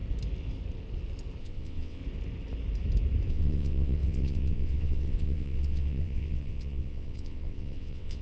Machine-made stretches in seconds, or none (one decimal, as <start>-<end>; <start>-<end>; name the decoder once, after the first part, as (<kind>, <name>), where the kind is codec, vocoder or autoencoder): 1.4-2.0 (vocoder, WaveNeXt); 3.3-8.2